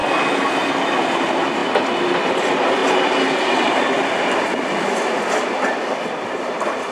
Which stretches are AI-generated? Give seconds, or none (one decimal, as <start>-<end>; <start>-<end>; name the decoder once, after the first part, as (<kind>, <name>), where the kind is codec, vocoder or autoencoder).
1.6-2.4 (vocoder, BigVGAN v2)